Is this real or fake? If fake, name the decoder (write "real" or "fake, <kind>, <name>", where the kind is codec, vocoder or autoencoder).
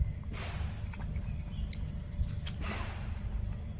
real